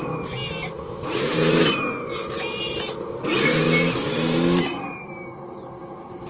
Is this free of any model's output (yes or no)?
yes